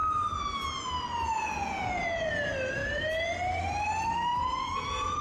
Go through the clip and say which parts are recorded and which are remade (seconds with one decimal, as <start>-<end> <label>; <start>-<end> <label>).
0.0-1.3 recorded; 1.3-2.3 remade; 2.3-4.3 recorded; 4.3-5.2 remade

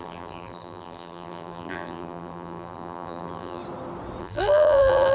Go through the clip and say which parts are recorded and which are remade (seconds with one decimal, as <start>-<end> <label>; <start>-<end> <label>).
0.0-3.6 remade; 3.6-4.2 recorded; 4.2-5.1 remade

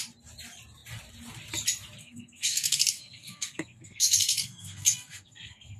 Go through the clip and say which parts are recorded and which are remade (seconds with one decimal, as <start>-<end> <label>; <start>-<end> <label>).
0.0-2.0 recorded; 2.0-5.8 remade

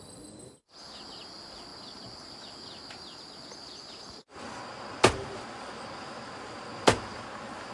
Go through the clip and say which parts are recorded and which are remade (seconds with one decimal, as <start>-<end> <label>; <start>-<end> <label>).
0.0-7.7 recorded

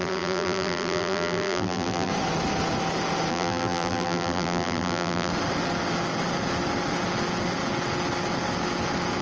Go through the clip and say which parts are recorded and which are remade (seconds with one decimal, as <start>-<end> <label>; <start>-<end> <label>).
0.0-2.1 remade; 2.1-3.3 recorded; 3.3-5.3 remade; 5.3-9.2 recorded

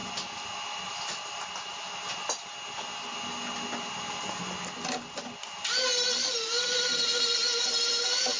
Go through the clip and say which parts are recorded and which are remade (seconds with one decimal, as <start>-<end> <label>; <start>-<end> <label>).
0.0-8.4 recorded

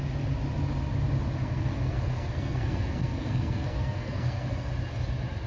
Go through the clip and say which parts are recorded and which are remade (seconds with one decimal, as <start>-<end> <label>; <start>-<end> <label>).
0.0-1.4 recorded; 1.4-4.7 remade; 4.7-5.5 recorded

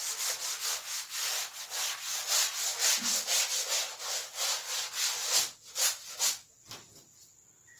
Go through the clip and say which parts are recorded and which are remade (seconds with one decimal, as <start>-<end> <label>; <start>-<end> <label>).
0.0-7.8 recorded